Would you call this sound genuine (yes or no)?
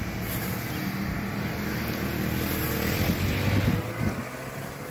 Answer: yes